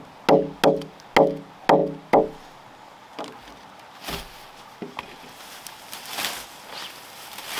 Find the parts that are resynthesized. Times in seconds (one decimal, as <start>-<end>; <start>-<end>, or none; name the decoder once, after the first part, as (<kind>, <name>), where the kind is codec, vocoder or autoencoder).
none